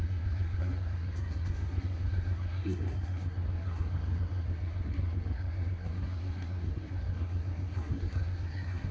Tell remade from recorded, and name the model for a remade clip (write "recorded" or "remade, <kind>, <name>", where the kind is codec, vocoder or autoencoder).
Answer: remade, codec, SNAC